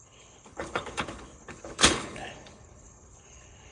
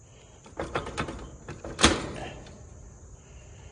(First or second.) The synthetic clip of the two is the first